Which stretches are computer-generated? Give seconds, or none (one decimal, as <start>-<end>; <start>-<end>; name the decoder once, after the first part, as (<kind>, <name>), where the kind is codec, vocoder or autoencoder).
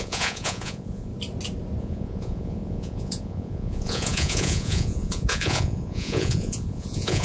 0.0-1.1 (vocoder, Vocos); 1.8-7.2